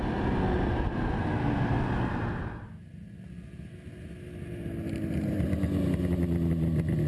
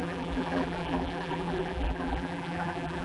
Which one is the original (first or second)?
first